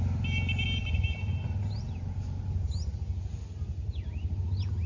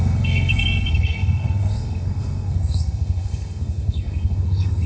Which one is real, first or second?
first